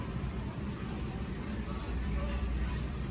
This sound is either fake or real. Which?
fake